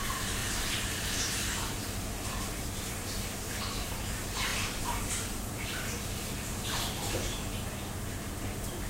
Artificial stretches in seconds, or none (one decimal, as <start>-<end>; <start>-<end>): 0.4-2.9; 4.5-7.4